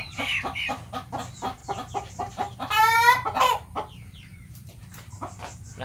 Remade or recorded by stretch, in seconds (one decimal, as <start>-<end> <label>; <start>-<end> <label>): 0.0-1.6 recorded; 1.6-5.1 remade; 5.1-5.8 recorded